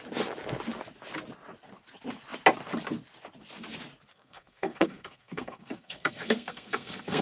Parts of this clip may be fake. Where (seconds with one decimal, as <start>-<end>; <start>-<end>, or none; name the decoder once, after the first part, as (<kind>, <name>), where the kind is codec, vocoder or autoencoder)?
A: 4.1-7.2 (codec, SNAC)